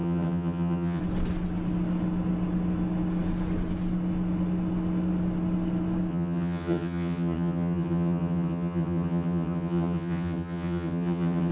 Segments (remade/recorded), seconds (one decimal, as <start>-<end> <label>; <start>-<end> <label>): 0.0-1.0 remade; 1.0-6.1 recorded; 6.1-11.5 remade